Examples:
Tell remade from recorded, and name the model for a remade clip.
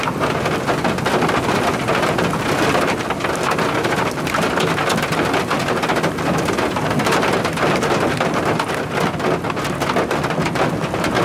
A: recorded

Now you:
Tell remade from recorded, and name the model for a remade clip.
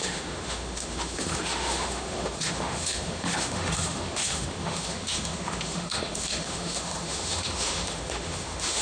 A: remade, autoencoder, DAC-VAE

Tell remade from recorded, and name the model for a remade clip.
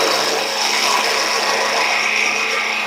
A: recorded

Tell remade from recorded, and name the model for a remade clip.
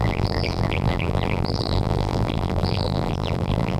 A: remade, vocoder, BigVGAN v2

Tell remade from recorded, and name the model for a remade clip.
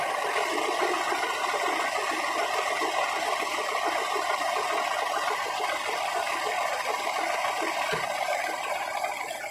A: recorded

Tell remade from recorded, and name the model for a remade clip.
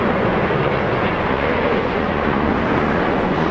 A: remade, vocoder, Vocos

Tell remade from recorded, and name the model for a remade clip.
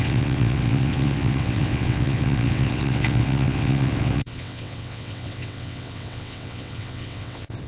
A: remade, vocoder, WaveNeXt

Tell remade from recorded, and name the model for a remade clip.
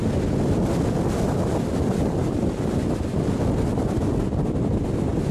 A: recorded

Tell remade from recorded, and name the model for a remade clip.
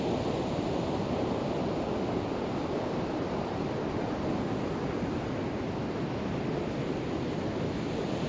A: recorded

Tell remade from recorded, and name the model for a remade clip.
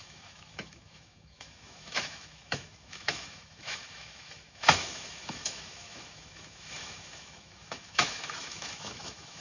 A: remade, autoencoder, DAC-VAE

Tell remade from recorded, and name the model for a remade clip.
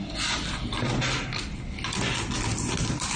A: recorded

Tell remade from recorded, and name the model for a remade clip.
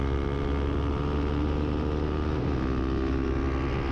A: recorded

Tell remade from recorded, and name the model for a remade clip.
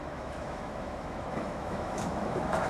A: remade, autoencoder, DAC-VAE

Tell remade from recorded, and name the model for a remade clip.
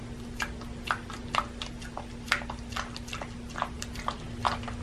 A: recorded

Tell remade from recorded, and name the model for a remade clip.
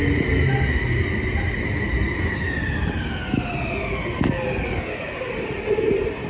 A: recorded